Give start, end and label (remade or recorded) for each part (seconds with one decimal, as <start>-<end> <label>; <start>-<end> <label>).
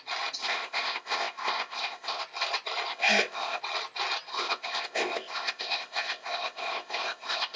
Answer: 0.0-0.4 recorded; 0.4-2.2 remade; 2.2-2.9 recorded; 2.9-3.6 remade; 3.6-4.3 recorded; 4.3-7.6 remade